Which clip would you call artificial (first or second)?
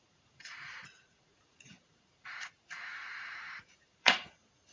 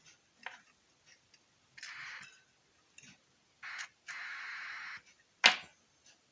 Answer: first